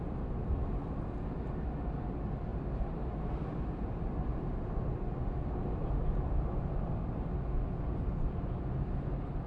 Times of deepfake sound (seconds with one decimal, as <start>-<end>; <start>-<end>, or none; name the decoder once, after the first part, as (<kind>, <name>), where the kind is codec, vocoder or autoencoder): 2.5-4.6 (vocoder, BigVGAN v2)